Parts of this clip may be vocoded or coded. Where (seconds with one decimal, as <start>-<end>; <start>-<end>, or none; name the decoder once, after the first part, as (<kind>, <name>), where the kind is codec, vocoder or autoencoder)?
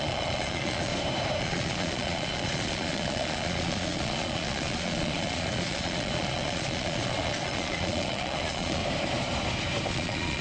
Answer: 0.0-0.9 (vocoder, Vocos); 1.4-8.8; 9.9-10.4